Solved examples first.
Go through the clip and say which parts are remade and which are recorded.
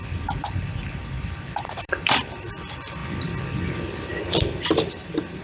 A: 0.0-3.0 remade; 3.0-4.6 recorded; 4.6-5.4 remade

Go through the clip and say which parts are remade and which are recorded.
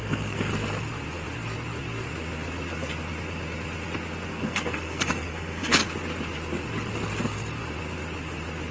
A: 0.0-0.5 remade; 0.5-4.3 recorded; 4.3-5.8 remade; 5.8-8.7 recorded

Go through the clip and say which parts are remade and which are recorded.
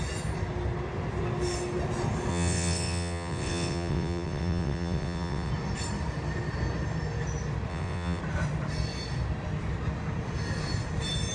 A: 0.0-2.3 recorded; 2.3-5.5 remade; 5.5-7.7 recorded; 7.7-8.2 remade; 8.2-11.3 recorded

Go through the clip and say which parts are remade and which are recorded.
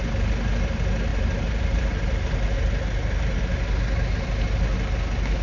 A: 0.0-1.1 recorded; 1.1-3.4 remade; 3.4-5.4 recorded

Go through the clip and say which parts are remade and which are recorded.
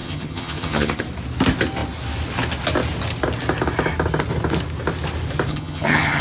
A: 0.0-1.0 remade; 1.0-5.5 recorded; 5.5-6.2 remade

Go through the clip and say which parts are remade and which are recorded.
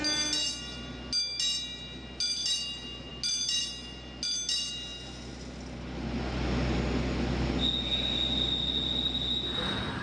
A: 0.0-10.0 recorded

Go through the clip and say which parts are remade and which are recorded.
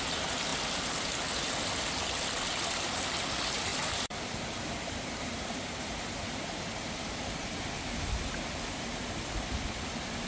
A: 0.0-3.7 recorded; 3.7-6.7 remade; 6.7-10.3 recorded